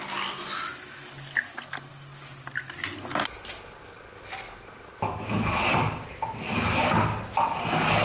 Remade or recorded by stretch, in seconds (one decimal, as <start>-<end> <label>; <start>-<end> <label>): 0.0-8.0 recorded